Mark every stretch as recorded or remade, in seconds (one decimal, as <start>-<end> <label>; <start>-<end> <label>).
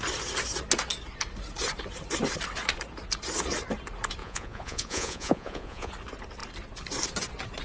0.0-4.2 recorded; 4.2-5.9 remade; 5.9-7.6 recorded